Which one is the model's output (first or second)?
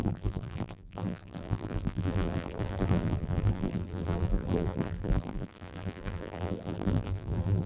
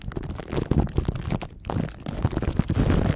first